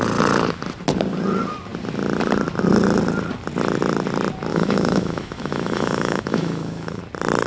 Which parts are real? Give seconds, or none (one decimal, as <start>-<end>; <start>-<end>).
0.0-4.5; 7.0-7.5